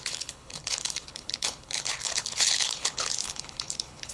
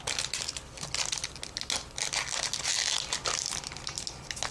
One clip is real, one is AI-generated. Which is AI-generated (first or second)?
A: first